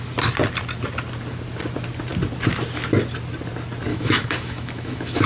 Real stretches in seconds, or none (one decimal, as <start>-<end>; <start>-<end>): 0.0-3.9